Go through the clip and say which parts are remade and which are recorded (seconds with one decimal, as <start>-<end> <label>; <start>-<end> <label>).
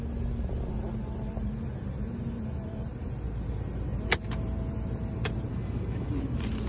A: 0.0-5.5 recorded; 5.5-6.1 remade; 6.1-6.7 recorded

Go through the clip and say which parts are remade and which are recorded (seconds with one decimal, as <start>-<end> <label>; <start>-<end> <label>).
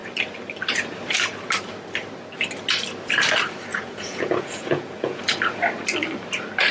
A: 0.0-3.7 recorded; 3.7-5.2 remade; 5.2-6.7 recorded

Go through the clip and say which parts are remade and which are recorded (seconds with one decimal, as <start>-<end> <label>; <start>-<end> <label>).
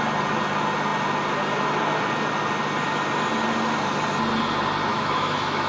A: 0.0-4.9 recorded; 4.9-5.7 remade